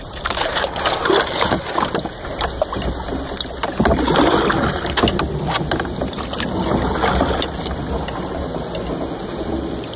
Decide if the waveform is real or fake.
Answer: real